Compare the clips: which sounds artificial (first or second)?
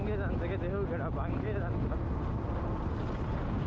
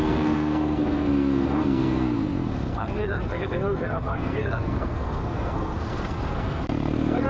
second